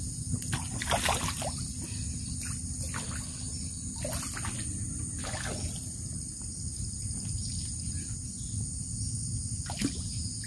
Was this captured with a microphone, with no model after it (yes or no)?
yes